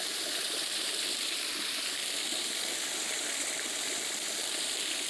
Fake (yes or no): yes